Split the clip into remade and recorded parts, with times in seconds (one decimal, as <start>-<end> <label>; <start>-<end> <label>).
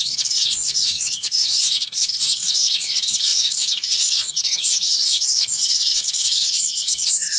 0.0-7.4 remade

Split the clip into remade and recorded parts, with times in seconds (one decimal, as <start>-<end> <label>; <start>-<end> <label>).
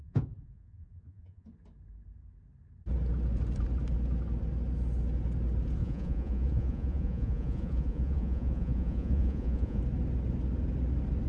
0.0-1.5 remade; 1.5-5.8 recorded; 5.8-9.8 remade; 9.8-11.3 recorded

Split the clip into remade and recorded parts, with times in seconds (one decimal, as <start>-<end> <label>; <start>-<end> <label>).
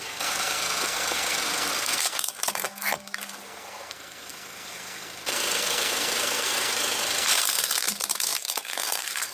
0.0-9.3 remade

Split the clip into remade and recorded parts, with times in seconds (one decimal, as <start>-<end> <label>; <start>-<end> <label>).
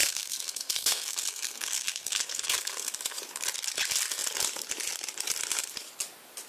0.0-2.9 remade; 2.9-6.5 recorded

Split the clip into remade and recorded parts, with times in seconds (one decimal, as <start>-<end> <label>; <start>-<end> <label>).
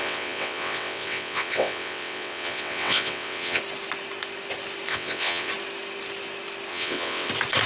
0.0-3.6 remade; 3.6-4.9 recorded; 4.9-5.5 remade; 5.5-6.7 recorded; 6.7-7.3 remade; 7.3-7.7 recorded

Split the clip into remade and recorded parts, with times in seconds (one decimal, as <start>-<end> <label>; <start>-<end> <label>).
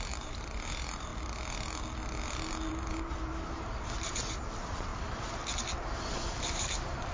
0.0-1.1 remade; 1.1-2.7 recorded; 2.7-4.9 remade; 4.9-6.4 recorded; 6.4-7.1 remade